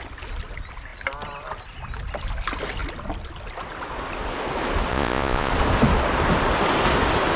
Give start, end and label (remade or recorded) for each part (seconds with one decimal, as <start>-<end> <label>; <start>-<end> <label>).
0.0-4.9 recorded; 4.9-5.5 remade; 5.5-7.4 recorded